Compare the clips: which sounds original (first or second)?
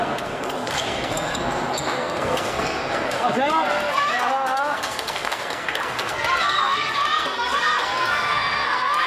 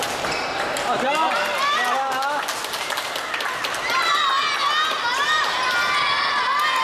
second